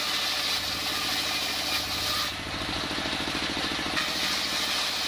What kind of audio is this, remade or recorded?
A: recorded